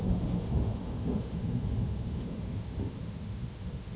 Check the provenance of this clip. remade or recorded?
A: remade